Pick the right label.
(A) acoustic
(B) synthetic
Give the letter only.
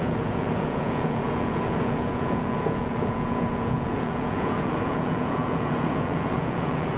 B